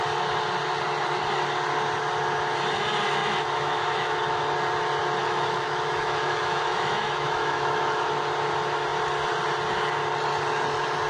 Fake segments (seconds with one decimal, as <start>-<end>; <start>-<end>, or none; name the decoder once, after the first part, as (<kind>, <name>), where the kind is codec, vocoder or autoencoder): 3.2-4.4 (autoencoder, DAC-VAE); 5.2-8.1